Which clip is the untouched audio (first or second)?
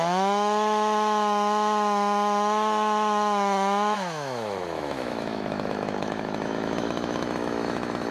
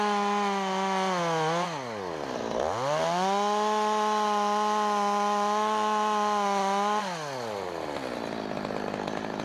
second